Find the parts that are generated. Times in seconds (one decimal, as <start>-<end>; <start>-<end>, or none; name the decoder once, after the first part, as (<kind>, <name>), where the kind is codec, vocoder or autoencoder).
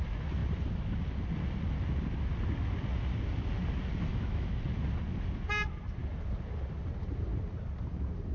4.1-4.6 (autoencoder, DAC-VAE)